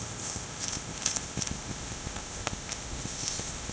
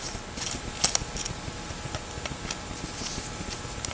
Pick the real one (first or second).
second